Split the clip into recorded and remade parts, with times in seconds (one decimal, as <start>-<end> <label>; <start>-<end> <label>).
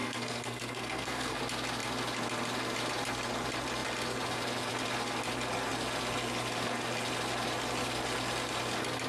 0.0-1.4 remade; 1.4-9.1 recorded